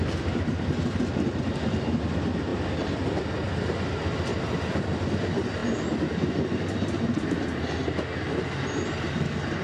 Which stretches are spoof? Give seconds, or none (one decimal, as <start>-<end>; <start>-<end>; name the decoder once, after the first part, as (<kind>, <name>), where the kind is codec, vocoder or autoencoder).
none